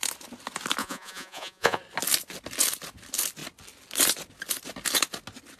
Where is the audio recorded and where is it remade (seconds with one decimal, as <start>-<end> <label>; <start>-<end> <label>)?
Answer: 0.0-0.8 recorded; 0.8-1.8 remade; 1.8-5.6 recorded